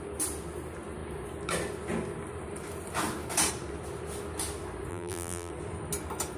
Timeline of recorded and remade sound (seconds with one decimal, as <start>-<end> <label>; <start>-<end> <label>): 0.0-4.9 recorded; 4.9-5.5 remade; 5.5-6.4 recorded